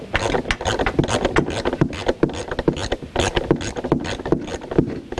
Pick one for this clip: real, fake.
real